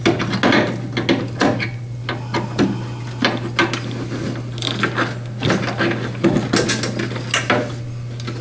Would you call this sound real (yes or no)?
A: yes